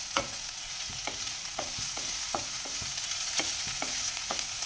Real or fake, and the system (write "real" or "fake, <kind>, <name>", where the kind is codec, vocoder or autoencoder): fake, vocoder, Vocos